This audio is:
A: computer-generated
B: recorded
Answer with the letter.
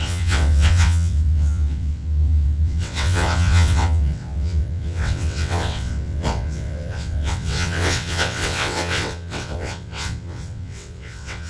A